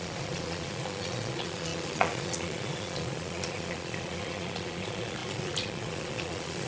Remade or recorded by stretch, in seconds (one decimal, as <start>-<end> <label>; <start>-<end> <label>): 0.0-6.7 remade